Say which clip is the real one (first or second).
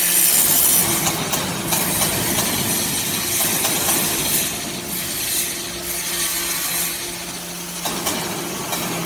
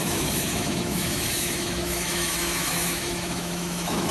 first